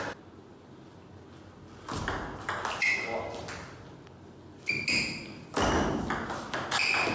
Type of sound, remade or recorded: recorded